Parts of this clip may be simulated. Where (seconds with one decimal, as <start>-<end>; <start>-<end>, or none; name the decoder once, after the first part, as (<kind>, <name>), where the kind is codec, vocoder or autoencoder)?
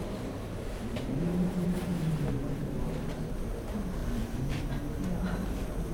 0.0-5.9 (vocoder, BigVGAN v2)